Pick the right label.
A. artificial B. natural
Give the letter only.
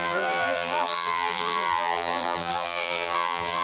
A